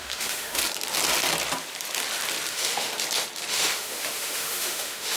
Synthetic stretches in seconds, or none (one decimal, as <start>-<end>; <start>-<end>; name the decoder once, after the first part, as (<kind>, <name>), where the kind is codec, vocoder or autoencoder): 0.0-0.6 (autoencoder, DAC-VAE); 2.5-2.9; 3.5-5.2